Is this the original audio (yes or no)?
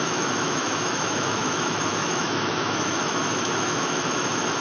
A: no